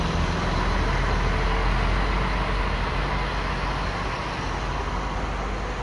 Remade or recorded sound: recorded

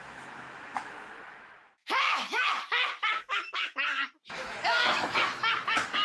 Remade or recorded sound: remade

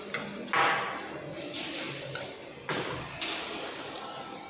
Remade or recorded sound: recorded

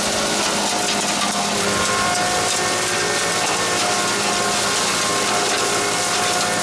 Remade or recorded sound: recorded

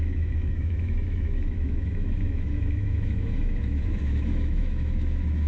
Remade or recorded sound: remade